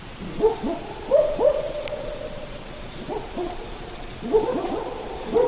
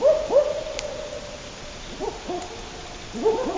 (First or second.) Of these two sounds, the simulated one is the first